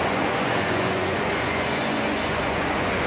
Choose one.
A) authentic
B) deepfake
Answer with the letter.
B